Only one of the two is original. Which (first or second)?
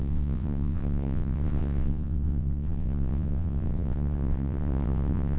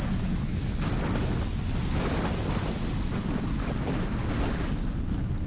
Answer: second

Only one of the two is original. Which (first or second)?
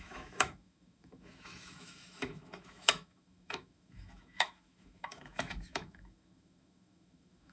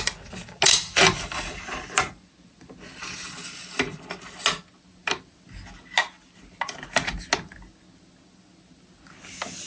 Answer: second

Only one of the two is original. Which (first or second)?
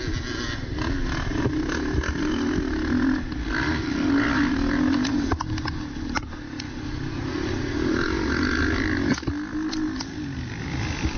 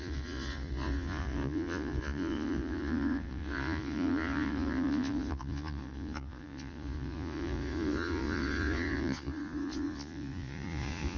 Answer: first